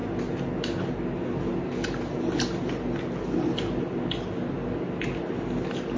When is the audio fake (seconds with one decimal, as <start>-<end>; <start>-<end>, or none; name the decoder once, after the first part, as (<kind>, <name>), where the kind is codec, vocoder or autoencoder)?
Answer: none